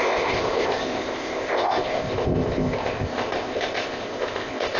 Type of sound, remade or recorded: remade